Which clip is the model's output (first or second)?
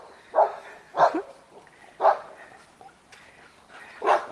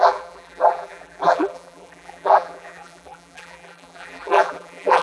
second